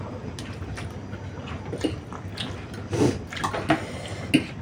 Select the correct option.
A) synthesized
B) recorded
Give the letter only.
B